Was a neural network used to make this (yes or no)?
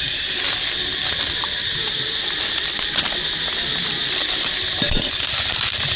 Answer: yes